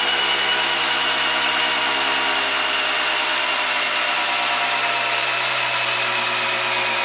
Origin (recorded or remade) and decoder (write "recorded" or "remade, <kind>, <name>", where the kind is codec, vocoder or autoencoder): recorded